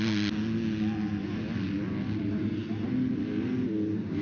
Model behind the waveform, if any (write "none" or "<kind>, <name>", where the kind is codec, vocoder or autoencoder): none